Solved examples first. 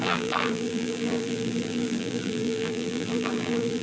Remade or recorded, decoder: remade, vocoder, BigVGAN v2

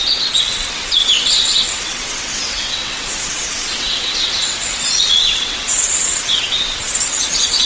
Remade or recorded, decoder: remade, vocoder, WaveNeXt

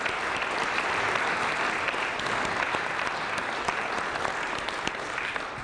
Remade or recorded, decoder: recorded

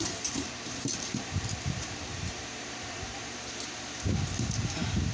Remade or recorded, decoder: remade, vocoder, BigVGAN v2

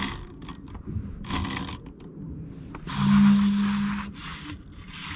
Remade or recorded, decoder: recorded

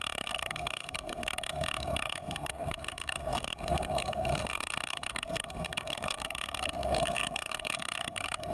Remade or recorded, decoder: remade, codec, SNAC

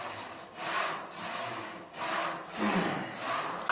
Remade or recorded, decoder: recorded